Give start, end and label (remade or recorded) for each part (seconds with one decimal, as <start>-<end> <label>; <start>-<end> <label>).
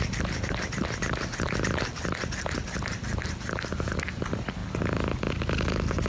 0.0-6.1 recorded